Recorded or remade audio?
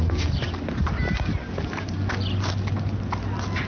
recorded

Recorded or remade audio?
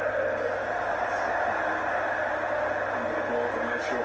recorded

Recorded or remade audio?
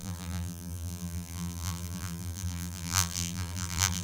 remade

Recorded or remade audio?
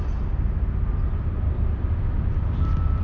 recorded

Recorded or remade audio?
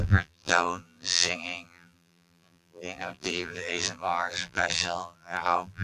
remade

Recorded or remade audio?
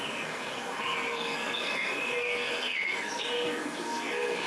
remade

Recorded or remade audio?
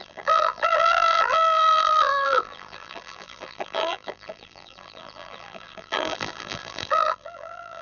remade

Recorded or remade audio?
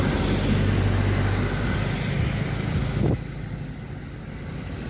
recorded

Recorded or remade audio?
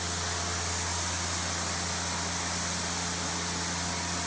recorded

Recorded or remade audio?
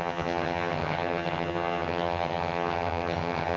remade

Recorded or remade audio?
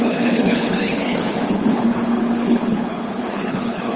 remade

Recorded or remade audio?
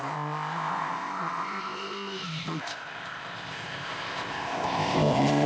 remade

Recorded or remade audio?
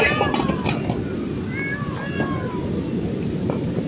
recorded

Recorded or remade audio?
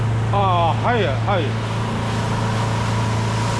recorded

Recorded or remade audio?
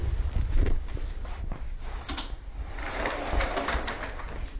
recorded